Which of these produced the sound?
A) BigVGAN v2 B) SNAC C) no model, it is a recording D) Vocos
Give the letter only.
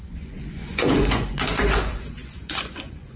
D